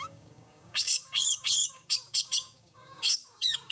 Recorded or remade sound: remade